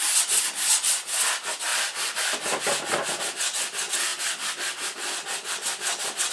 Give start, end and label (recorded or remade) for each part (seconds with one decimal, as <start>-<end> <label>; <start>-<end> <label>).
0.0-6.3 recorded